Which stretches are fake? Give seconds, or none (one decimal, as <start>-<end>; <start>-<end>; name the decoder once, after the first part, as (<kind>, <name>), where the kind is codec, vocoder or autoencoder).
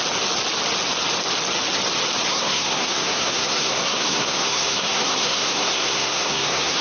2.3-6.8 (codec, SNAC)